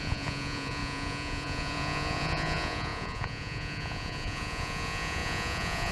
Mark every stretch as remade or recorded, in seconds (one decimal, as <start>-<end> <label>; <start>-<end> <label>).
0.0-5.9 remade